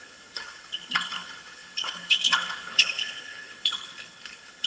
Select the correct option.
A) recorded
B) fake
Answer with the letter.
B